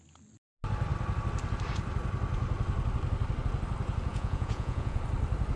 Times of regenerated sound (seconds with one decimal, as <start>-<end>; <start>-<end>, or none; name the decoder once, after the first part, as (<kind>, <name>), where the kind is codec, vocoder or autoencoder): 4.1-5.0 (vocoder, Vocos)